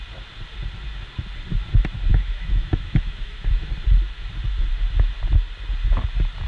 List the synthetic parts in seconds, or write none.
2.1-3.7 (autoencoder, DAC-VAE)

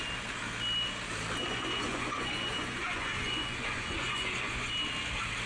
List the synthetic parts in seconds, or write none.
1.4-4.7 (vocoder, Vocos)

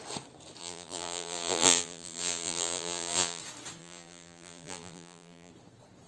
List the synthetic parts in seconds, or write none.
0.6-3.4 (vocoder, BigVGAN v2); 3.8-5.5